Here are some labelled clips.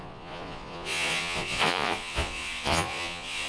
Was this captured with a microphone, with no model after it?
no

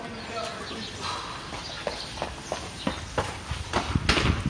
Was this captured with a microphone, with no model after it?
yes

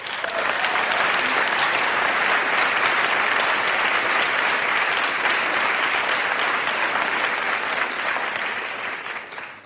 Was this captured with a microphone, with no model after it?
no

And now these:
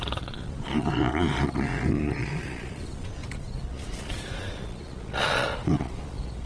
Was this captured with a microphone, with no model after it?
no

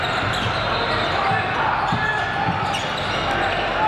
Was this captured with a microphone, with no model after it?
yes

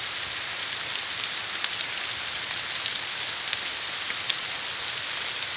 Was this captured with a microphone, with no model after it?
yes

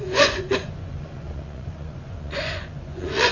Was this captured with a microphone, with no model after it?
no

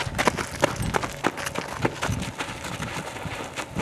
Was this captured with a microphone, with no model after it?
yes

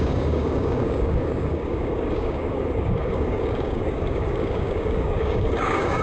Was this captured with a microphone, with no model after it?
no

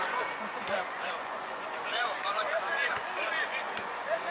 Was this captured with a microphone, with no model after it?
no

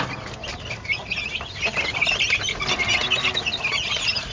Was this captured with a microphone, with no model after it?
yes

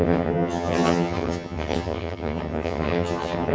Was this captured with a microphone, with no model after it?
no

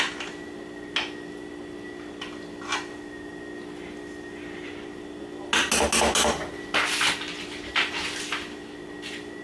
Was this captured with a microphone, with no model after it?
yes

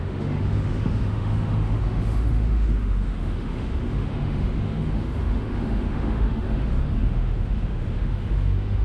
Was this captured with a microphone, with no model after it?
no